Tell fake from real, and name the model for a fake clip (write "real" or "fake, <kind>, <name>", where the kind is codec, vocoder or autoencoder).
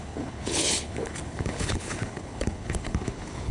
fake, codec, HILCodec